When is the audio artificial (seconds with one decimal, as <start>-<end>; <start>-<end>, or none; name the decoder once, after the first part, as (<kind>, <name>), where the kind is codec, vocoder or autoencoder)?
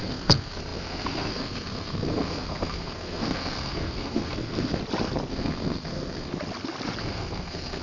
0.0-4.8 (codec, SNAC); 5.3-6.3; 7.0-7.8